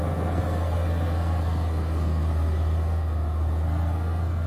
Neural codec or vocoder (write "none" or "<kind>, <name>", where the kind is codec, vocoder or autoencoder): codec, SNAC